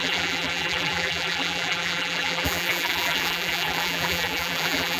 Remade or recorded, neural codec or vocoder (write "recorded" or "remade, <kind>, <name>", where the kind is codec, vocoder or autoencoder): remade, vocoder, BigVGAN v2